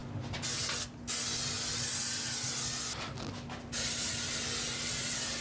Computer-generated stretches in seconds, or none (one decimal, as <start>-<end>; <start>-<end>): none